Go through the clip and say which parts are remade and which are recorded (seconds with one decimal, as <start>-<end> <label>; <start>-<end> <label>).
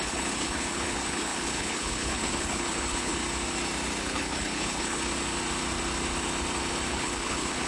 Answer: 0.0-3.2 remade; 3.2-4.0 recorded; 4.0-5.1 remade; 5.1-6.9 recorded; 6.9-7.7 remade